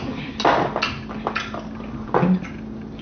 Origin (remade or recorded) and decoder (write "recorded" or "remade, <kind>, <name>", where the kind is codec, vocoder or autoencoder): recorded